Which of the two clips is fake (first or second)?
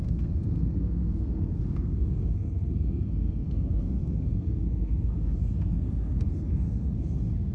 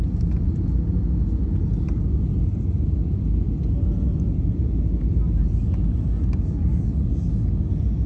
first